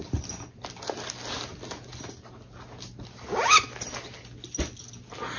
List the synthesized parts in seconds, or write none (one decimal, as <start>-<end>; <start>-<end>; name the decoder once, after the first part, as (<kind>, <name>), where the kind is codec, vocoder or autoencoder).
none